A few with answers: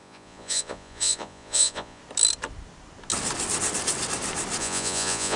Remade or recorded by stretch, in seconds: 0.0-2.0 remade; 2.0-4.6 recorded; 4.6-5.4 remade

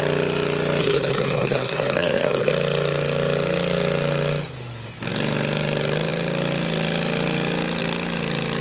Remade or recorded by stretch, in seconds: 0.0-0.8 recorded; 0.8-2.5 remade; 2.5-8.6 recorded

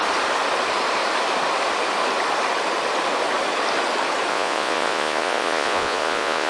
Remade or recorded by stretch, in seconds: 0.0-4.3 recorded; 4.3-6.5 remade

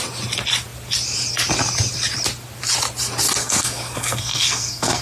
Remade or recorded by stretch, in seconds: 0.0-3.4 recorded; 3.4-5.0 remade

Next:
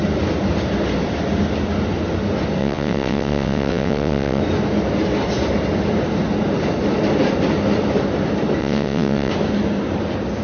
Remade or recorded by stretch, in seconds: 0.0-2.6 recorded; 2.6-4.4 remade; 4.4-8.6 recorded; 8.6-9.3 remade; 9.3-10.4 recorded

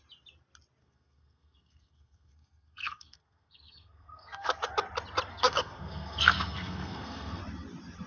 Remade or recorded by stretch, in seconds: 0.0-0.8 recorded; 0.8-4.7 remade; 4.7-5.3 recorded; 5.3-7.4 remade; 7.4-8.1 recorded

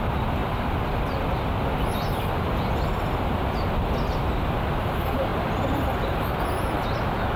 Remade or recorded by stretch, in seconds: 0.0-7.4 recorded